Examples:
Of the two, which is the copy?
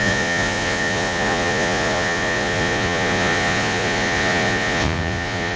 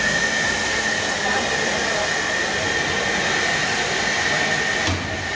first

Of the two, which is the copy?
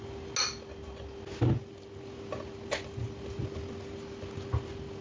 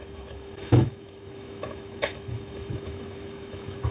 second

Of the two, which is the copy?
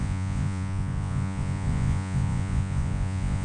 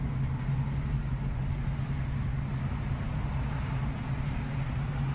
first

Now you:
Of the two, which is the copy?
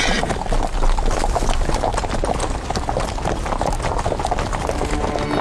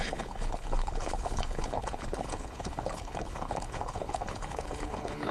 second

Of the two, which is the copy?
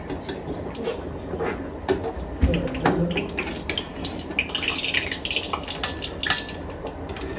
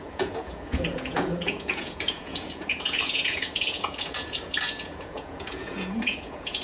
second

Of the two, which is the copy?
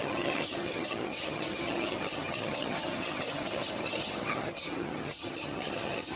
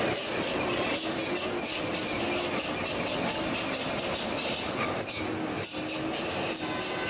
first